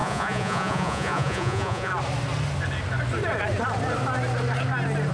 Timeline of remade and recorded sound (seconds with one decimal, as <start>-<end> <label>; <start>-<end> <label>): 0.0-1.9 remade; 1.9-5.1 recorded